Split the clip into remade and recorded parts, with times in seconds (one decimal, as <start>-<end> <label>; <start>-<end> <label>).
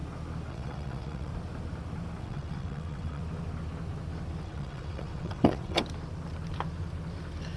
0.0-0.5 recorded; 0.5-1.3 remade; 1.3-2.2 recorded; 2.2-3.2 remade; 3.2-4.4 recorded; 4.4-5.8 remade; 5.8-7.6 recorded